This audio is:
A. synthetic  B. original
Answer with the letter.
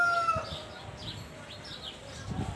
B